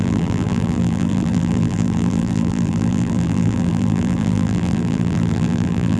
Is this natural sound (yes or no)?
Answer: no